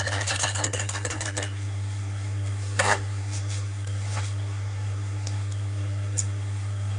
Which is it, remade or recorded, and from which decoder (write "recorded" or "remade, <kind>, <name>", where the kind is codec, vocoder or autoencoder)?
remade, codec, SNAC